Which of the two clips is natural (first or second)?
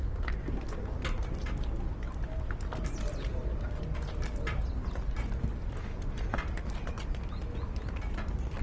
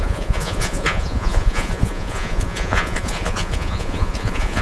first